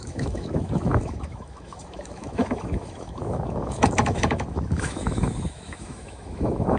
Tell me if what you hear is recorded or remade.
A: remade